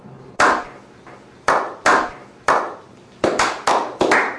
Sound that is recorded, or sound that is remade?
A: remade